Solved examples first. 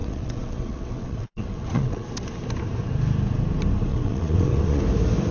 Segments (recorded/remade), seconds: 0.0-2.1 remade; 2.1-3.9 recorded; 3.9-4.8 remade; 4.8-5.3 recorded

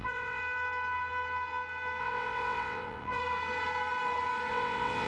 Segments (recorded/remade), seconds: 0.0-0.4 remade; 0.4-2.0 recorded; 2.0-3.2 remade; 3.2-4.5 recorded; 4.5-5.1 remade

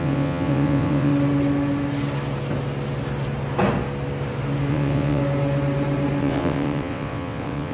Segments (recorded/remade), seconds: 0.0-1.1 remade; 1.1-4.7 recorded; 4.7-5.2 remade; 5.2-6.2 recorded; 6.2-7.7 remade

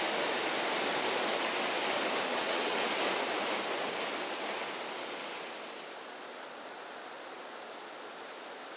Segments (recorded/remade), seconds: 0.0-2.3 recorded; 2.3-2.9 remade; 2.9-8.8 recorded

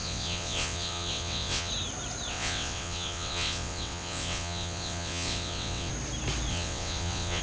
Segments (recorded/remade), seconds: 0.0-1.7 remade; 1.7-2.3 recorded; 2.3-5.9 remade; 5.9-6.5 recorded; 6.5-7.4 remade

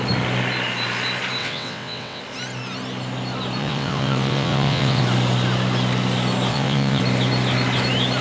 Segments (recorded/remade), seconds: 0.0-1.4 recorded; 1.4-2.2 remade; 2.2-3.6 recorded; 3.6-5.0 remade; 5.0-6.5 recorded; 6.5-7.0 remade; 7.0-8.2 recorded

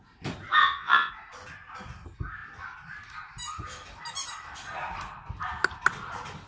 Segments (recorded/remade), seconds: 0.0-0.6 recorded; 0.6-1.1 remade; 1.1-6.5 recorded